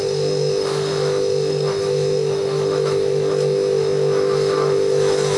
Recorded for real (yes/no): no